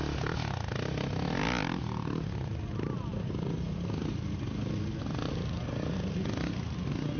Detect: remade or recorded recorded